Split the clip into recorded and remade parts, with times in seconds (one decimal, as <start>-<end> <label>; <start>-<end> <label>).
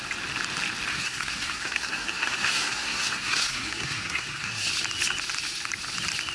0.0-0.9 recorded; 0.9-4.7 remade; 4.7-6.3 recorded